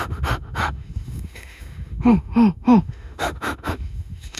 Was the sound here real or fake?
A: fake